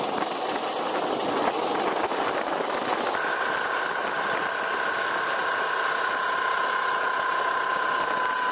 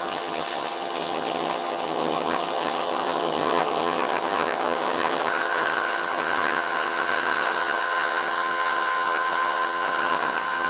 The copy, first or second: second